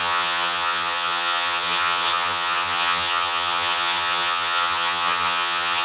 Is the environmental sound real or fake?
fake